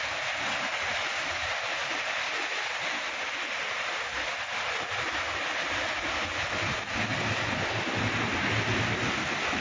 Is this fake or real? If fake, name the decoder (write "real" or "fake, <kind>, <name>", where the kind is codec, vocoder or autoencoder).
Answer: real